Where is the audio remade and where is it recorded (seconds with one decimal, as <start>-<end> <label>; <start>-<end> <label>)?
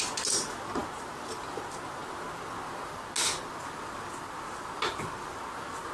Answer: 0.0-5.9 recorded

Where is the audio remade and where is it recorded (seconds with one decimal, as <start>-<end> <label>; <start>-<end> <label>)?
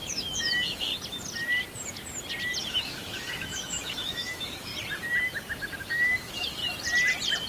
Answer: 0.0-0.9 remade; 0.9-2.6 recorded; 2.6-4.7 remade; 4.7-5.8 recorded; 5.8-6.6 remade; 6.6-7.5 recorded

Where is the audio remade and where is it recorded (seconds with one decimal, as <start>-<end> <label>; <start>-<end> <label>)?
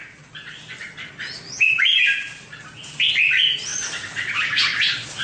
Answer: 0.0-5.2 recorded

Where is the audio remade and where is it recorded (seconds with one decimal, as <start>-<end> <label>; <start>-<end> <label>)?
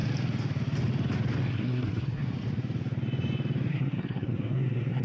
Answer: 0.0-1.5 recorded; 1.5-2.2 remade; 2.2-3.7 recorded; 3.7-5.0 remade